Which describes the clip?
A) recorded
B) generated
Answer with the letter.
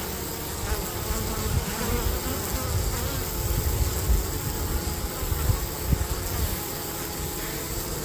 A